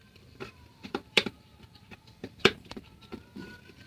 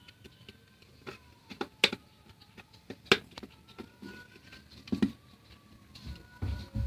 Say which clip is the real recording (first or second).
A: second